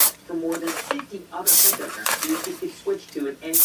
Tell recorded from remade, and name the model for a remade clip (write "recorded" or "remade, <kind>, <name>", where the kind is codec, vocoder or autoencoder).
remade, vocoder, BigVGAN v2